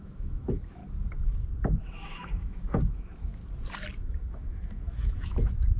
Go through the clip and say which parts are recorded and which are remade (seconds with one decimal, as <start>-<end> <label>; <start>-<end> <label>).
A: 0.0-0.8 remade; 0.8-1.8 recorded; 1.8-3.4 remade; 3.4-4.0 recorded; 4.0-5.8 remade